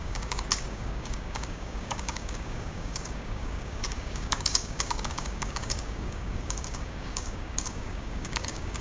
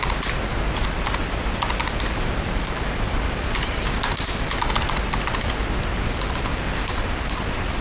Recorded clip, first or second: second